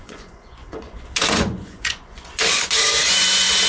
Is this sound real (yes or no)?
no